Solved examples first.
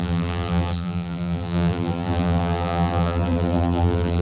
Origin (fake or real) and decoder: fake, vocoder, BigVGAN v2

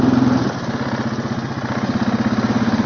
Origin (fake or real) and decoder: real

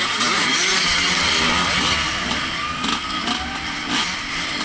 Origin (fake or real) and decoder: real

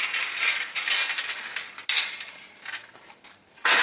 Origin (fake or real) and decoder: real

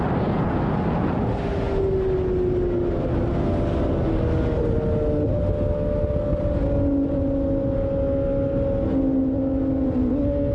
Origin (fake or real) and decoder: real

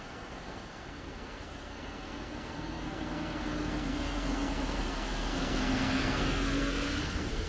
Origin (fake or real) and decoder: fake, codec, SNAC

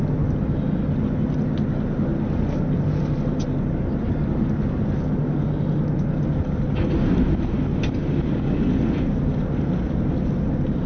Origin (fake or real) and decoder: real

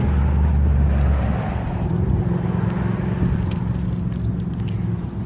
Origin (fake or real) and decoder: real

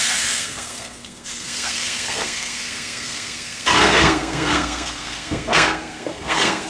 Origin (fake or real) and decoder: fake, codec, SNAC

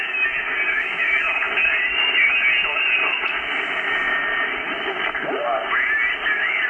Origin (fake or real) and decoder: real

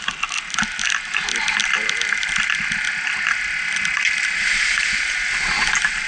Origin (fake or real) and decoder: real